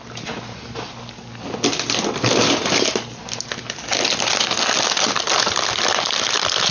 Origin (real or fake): real